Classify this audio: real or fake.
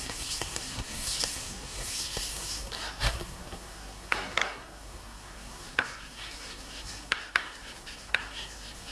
fake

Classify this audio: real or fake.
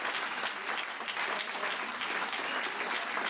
real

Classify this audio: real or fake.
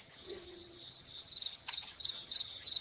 fake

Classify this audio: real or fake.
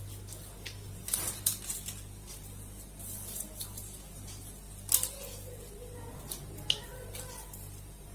real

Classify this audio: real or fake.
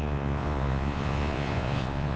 fake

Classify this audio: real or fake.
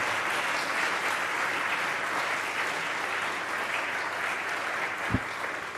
real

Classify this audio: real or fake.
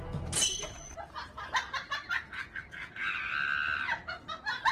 real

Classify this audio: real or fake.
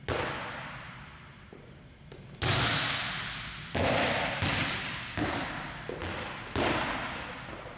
real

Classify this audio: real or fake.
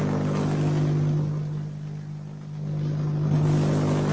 real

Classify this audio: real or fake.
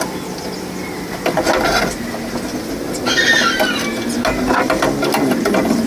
real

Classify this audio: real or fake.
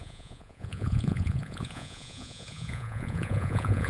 fake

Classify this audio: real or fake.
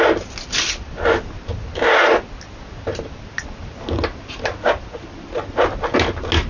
real